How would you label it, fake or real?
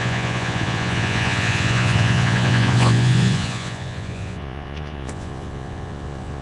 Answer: fake